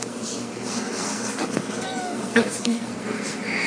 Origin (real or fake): fake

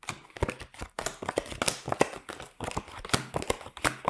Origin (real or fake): real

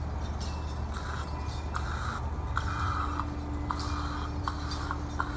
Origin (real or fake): real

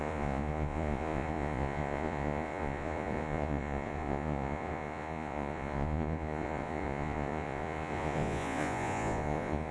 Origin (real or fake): fake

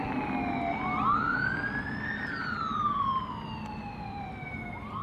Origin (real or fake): real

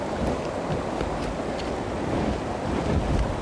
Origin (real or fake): real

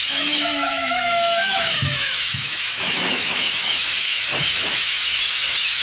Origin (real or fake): fake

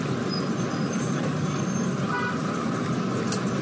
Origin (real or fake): real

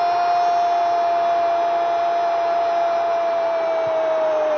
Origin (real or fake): real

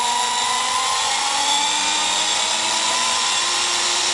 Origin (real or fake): fake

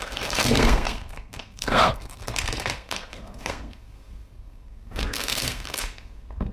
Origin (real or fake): fake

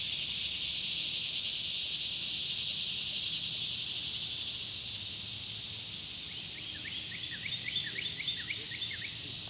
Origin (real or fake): real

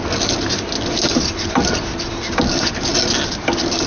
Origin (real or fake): real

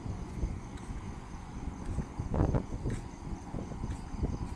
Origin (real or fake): fake